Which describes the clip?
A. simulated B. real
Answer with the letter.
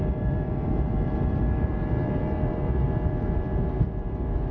A